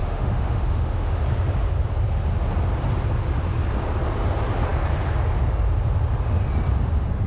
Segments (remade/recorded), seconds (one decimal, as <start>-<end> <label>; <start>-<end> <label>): 0.0-1.2 remade; 1.2-7.3 recorded